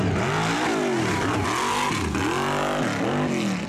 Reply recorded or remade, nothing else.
recorded